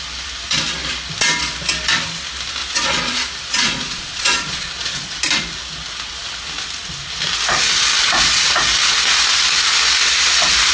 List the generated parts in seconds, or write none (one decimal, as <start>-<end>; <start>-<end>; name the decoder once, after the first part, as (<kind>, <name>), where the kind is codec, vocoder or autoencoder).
2.6-5.2 (vocoder, Vocos); 8.0-8.6